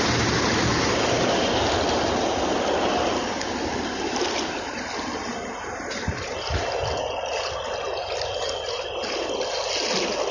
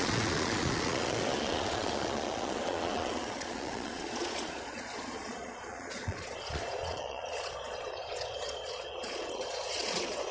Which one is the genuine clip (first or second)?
first